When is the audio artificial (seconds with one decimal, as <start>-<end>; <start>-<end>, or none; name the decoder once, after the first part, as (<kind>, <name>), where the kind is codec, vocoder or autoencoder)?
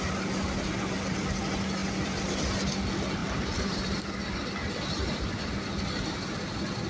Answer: 3.2-4.0 (vocoder, BigVGAN v2)